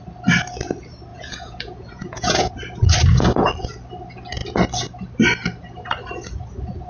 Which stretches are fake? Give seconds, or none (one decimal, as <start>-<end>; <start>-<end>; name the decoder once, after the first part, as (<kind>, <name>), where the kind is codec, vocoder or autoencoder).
1.1-2.5 (vocoder, Vocos)